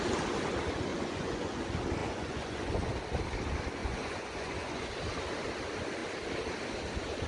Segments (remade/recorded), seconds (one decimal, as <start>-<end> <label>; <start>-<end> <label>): 0.0-0.9 recorded; 0.9-1.6 remade; 1.6-2.0 recorded; 2.0-2.9 remade; 2.9-3.8 recorded; 3.8-4.9 remade; 4.9-7.3 recorded